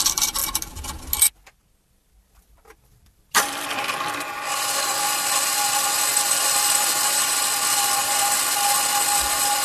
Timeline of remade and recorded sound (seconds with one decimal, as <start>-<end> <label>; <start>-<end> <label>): 0.0-0.4 remade; 0.4-1.7 recorded; 1.7-9.6 remade